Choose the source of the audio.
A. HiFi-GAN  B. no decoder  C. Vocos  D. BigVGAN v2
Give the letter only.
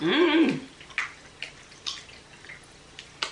B